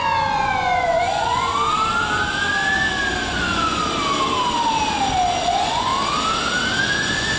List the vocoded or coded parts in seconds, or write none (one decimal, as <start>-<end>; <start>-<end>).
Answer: 0.0-1.5; 3.3-3.8; 5.4-5.9; 6.8-7.4